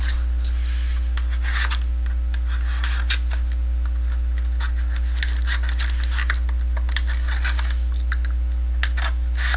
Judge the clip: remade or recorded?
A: recorded